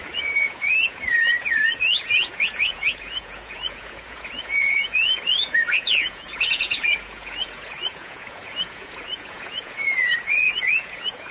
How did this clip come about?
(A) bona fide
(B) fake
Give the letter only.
B